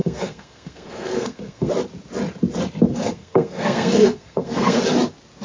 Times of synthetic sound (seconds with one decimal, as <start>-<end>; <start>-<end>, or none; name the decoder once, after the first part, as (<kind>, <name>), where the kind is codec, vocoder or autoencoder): 0.0-1.7 (codec, SNAC); 2.9-4.8